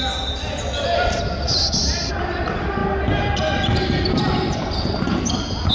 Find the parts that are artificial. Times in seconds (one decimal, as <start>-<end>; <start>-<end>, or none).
none